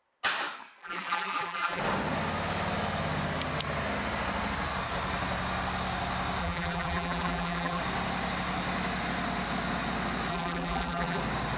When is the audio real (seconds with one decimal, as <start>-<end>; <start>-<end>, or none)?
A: 0.0-0.8; 1.8-6.4; 7.8-10.3; 11.2-11.6